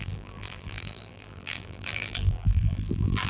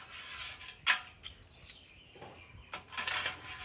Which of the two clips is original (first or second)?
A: second